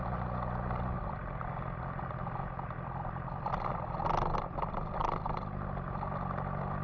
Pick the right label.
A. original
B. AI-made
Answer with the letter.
A